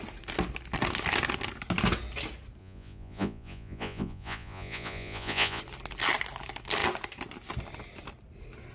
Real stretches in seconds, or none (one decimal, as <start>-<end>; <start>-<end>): 0.0-2.6; 5.6-8.7